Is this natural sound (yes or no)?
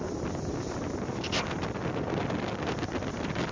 yes